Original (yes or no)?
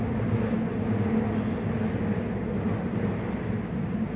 yes